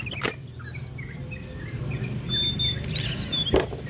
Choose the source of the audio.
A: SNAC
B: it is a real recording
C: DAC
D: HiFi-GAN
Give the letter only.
B